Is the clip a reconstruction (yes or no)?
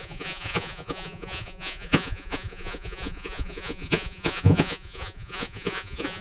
yes